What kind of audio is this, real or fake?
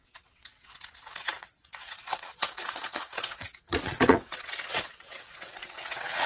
fake